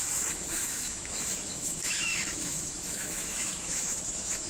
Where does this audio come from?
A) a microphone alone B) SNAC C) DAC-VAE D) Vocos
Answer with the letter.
C